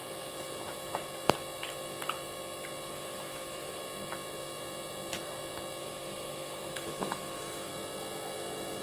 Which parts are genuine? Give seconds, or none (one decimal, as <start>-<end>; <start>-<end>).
0.0-2.9; 3.8-5.8; 7.7-8.8